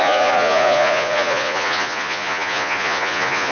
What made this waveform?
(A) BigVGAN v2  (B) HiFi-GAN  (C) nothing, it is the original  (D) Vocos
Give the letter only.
D